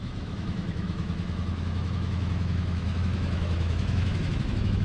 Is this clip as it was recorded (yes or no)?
no